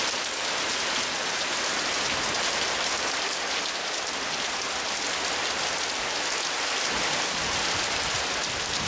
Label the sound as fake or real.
real